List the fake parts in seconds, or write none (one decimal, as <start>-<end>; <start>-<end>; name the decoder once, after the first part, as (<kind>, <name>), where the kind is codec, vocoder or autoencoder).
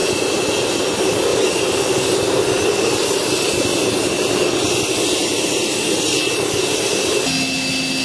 1.3-2.3 (vocoder, BigVGAN v2)